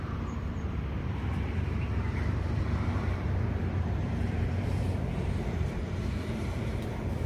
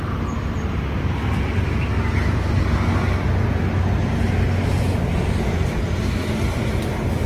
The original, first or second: second